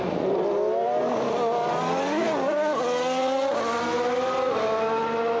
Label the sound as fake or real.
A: real